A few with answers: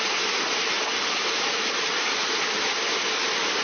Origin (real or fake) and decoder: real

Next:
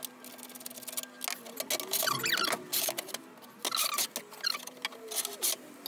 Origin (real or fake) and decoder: real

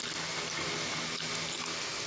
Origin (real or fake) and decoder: real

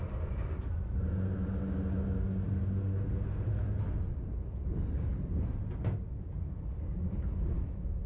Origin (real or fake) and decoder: real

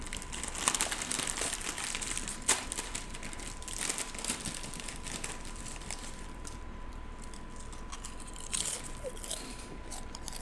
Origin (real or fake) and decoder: fake, vocoder, BigVGAN v2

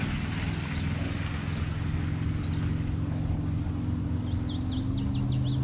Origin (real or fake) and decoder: real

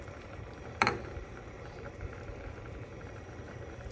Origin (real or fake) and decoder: fake, vocoder, BigVGAN v2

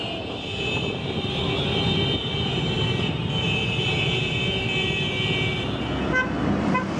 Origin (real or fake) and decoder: real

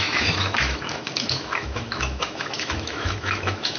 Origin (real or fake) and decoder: fake, autoencoder, DAC-VAE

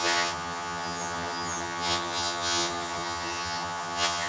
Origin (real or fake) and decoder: fake, vocoder, HiFi-GAN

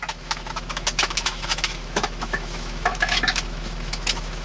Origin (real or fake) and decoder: fake, autoencoder, DAC-VAE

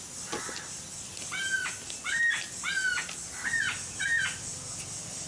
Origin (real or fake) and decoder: real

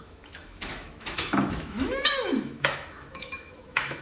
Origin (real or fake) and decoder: fake, autoencoder, DAC-VAE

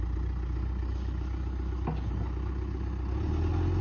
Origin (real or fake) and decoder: real